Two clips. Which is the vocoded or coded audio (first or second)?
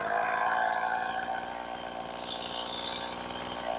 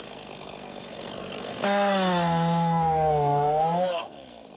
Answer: second